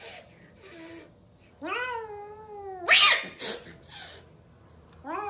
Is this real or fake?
real